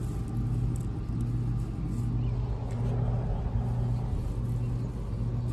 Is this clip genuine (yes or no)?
yes